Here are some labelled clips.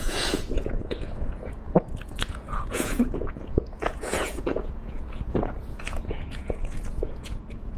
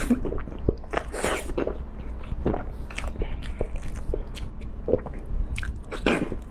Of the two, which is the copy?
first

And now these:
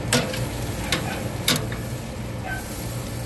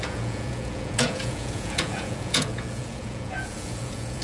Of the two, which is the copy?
second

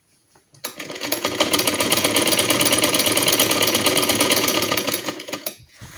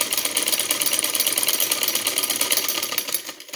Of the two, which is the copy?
first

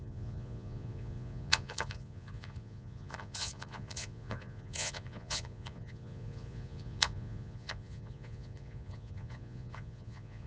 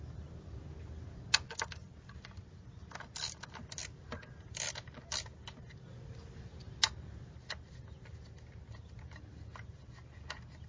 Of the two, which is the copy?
first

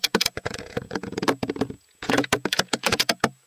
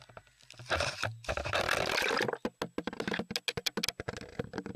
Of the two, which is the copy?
first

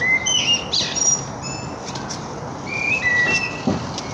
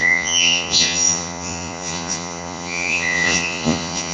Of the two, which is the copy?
second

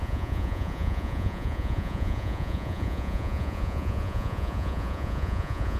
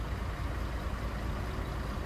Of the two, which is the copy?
first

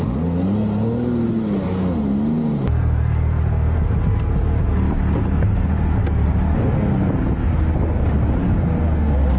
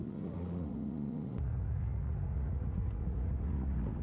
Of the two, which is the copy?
second